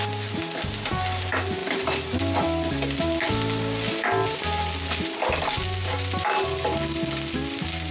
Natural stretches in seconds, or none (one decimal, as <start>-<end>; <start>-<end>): 0.0-7.9